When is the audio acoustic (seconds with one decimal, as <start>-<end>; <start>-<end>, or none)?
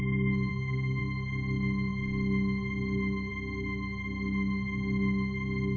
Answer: 0.0-0.5; 1.0-5.8